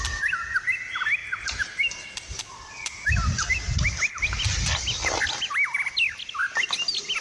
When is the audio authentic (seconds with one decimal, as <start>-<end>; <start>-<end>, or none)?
0.0-7.2